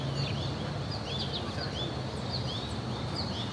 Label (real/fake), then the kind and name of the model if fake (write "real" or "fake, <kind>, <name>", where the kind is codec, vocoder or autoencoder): real